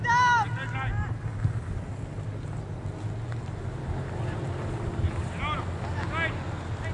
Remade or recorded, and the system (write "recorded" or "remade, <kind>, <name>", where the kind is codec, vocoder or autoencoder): recorded